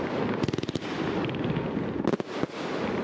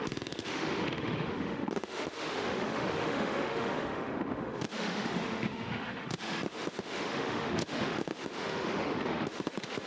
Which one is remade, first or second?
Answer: second